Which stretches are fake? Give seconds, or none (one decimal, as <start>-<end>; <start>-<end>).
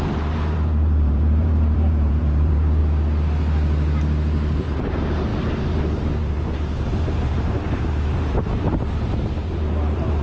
0.0-2.8; 4.6-10.2